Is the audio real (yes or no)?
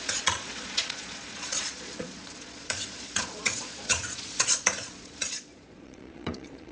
no